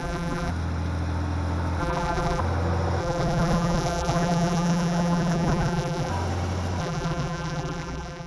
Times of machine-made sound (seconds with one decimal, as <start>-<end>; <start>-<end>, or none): 0.0-0.5; 1.8-2.4; 3.0-6.1; 6.8-8.3